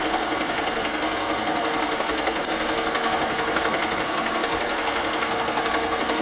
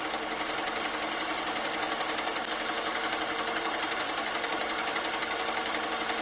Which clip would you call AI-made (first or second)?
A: first